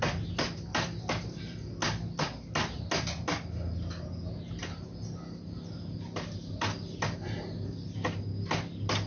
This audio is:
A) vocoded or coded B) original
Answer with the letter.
B